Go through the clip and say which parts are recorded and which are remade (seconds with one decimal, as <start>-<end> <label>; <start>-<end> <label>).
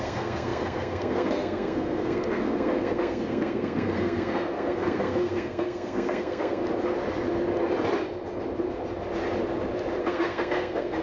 0.0-6.6 remade; 6.6-10.0 recorded; 10.0-11.0 remade